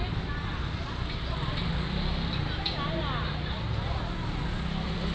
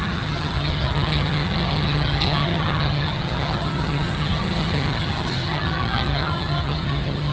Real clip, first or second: first